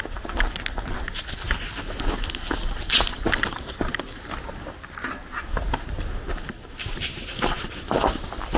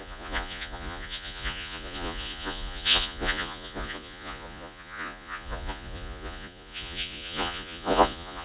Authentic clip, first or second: first